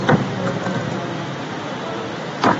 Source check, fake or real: real